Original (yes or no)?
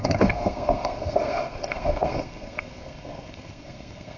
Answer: no